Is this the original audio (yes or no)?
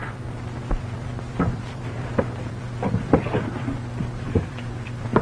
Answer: no